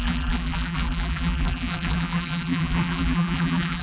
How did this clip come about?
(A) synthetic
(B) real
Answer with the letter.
A